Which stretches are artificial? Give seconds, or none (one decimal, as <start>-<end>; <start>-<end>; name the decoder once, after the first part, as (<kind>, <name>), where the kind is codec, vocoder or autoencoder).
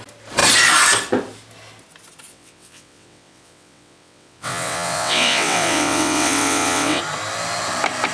2.3-7.0 (vocoder, WaveNeXt)